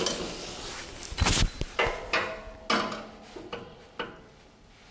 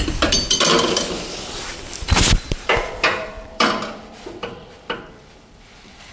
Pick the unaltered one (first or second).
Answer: first